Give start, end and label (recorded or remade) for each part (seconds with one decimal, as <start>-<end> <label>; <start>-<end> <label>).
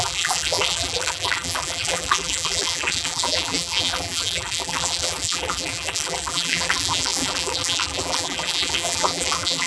0.0-9.7 remade